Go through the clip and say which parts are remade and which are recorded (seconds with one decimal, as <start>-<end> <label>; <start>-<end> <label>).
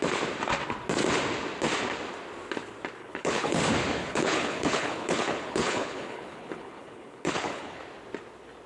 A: 0.0-3.0 recorded; 3.0-3.6 remade; 3.6-4.0 recorded; 4.0-7.8 remade; 7.8-8.7 recorded